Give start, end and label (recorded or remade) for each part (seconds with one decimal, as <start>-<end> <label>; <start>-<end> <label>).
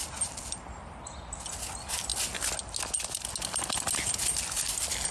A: 0.0-5.1 recorded